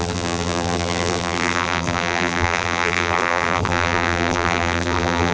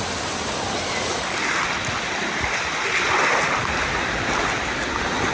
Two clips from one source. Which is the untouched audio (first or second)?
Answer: second